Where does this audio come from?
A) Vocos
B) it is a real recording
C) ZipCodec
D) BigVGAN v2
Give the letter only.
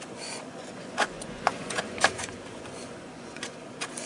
A